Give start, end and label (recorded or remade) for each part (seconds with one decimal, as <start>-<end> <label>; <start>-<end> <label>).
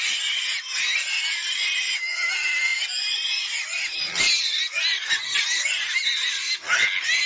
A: 0.0-7.3 recorded